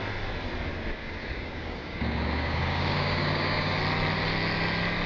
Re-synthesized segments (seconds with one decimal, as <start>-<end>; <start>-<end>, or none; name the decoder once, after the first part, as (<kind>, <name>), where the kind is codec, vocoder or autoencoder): 0.7-3.8 (codec, DAC)